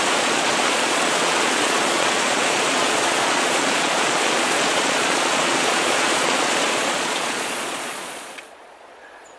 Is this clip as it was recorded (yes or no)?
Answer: no